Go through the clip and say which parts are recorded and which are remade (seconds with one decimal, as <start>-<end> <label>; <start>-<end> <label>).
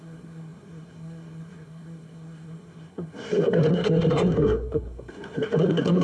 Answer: 0.0-6.0 remade